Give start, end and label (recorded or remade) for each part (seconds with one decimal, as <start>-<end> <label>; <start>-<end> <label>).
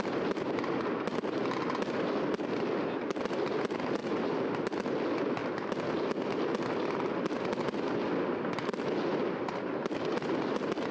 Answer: 0.0-10.9 recorded